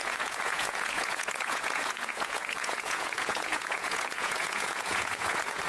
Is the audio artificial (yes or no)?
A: yes